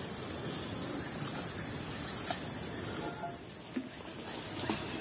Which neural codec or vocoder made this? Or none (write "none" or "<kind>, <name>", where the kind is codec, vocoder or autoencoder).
none